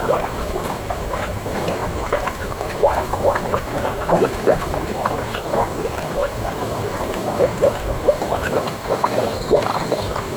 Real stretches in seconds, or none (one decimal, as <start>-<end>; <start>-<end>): none